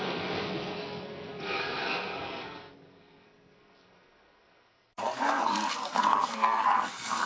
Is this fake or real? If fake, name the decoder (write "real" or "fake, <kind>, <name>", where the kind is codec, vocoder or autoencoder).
fake, codec, SNAC